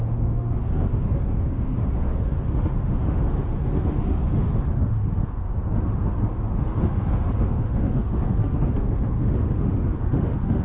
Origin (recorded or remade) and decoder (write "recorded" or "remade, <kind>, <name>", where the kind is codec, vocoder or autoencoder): remade, autoencoder, DAC-VAE